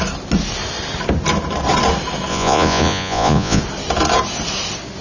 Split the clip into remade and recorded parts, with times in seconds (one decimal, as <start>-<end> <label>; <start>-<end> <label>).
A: 0.0-2.3 recorded; 2.3-3.6 remade; 3.6-5.0 recorded